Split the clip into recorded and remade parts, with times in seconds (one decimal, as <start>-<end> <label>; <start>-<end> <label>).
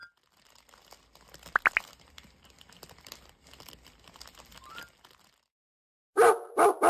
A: 0.0-6.9 recorded